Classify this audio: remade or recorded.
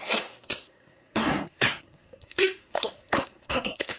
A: remade